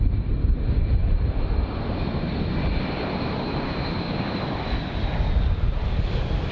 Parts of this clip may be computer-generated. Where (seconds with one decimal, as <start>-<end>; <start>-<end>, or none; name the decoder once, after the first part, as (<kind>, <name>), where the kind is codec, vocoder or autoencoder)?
1.0-4.9 (vocoder, BigVGAN v2)